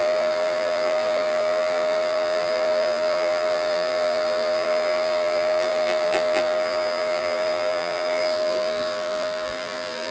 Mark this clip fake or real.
fake